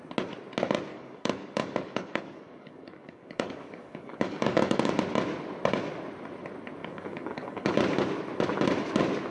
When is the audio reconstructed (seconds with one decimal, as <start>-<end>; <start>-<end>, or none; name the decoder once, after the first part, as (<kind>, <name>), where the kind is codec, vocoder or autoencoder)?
0.9-4.9 (codec, DAC); 6.8-7.7